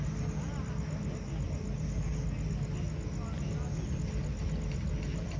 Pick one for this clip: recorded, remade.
recorded